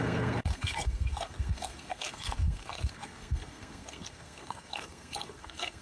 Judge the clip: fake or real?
fake